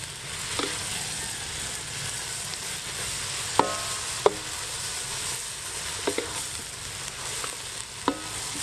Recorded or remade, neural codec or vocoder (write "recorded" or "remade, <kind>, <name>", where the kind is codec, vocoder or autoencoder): recorded